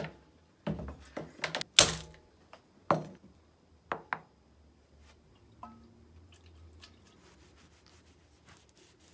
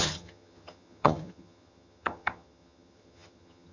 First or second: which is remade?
second